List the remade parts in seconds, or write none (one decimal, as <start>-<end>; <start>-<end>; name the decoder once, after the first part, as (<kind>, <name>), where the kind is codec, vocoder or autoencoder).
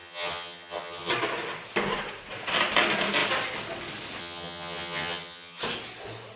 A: 0.0-1.1 (vocoder, HiFi-GAN); 4.2-5.6